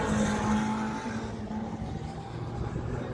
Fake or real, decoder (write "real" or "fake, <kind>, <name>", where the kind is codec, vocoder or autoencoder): real